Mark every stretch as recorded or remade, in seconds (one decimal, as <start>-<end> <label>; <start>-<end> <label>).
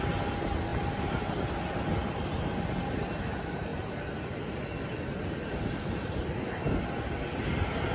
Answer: 0.0-0.7 recorded; 0.7-1.3 remade; 1.3-2.0 recorded; 2.0-2.9 remade; 2.9-3.7 recorded; 3.7-6.1 remade; 6.1-7.9 recorded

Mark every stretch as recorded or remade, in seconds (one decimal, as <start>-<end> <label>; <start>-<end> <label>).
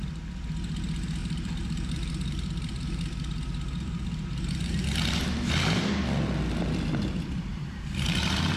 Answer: 0.0-1.2 recorded; 1.2-4.8 remade; 4.8-5.2 recorded; 5.2-5.8 remade; 5.8-7.5 recorded; 7.5-8.6 remade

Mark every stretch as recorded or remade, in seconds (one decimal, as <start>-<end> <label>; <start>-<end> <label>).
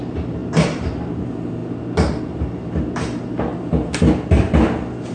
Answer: 0.0-1.6 remade; 1.6-2.2 recorded; 2.2-3.5 remade; 3.5-5.1 recorded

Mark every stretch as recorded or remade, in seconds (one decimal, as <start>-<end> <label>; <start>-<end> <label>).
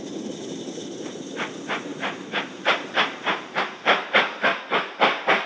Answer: 0.0-1.9 recorded; 1.9-5.5 remade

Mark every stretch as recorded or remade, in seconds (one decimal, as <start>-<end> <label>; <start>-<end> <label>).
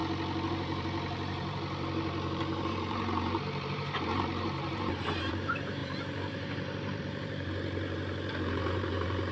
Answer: 0.0-0.5 recorded; 0.5-9.3 remade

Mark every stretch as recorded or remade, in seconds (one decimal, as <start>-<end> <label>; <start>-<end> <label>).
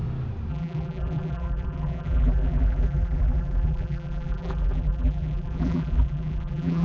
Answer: 0.0-0.5 recorded; 0.5-6.8 remade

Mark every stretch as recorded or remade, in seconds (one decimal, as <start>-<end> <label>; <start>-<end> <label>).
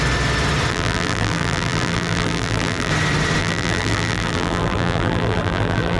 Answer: 0.0-0.7 recorded; 0.7-2.9 remade; 2.9-3.4 recorded; 3.4-6.0 remade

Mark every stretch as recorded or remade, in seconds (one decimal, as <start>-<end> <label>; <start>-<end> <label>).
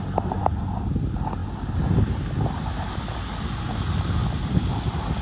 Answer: 0.0-5.2 recorded